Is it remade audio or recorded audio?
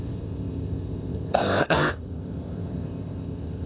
remade